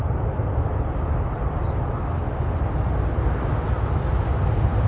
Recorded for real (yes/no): yes